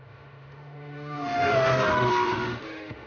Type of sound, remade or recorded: remade